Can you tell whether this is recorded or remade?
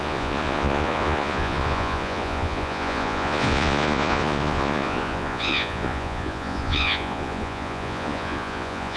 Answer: remade